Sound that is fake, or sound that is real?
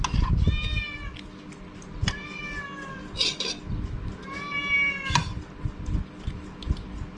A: real